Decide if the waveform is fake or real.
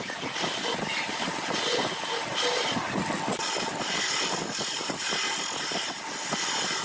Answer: real